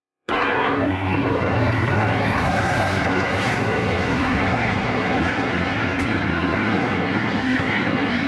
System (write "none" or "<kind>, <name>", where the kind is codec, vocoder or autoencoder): codec, SNAC